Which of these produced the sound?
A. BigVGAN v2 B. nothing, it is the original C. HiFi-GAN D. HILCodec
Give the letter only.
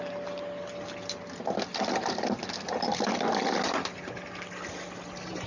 B